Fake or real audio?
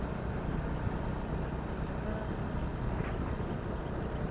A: real